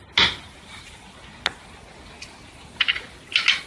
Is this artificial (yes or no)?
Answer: no